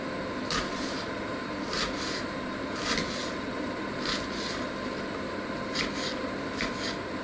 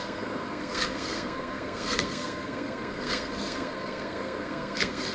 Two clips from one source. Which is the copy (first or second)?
second